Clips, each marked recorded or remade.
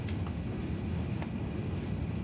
recorded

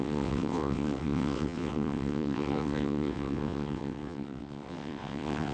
remade